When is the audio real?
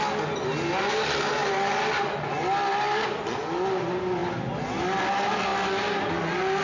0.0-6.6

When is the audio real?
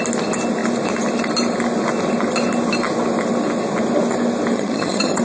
0.0-4.5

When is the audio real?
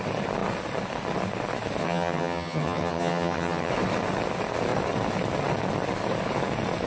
0.0-1.8; 3.7-6.9